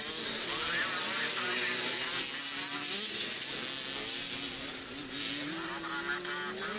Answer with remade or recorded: recorded